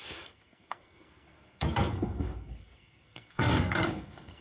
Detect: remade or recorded remade